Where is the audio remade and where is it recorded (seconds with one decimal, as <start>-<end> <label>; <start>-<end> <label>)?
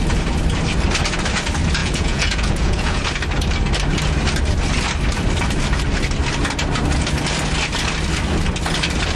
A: 0.0-1.8 recorded; 1.8-3.0 remade; 3.0-9.2 recorded